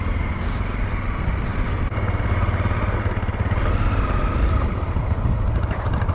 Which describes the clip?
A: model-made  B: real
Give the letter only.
B